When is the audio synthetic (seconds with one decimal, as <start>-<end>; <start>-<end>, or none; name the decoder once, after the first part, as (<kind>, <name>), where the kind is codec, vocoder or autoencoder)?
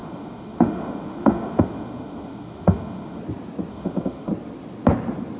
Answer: 0.0-3.2 (autoencoder, DAC-VAE); 3.7-4.3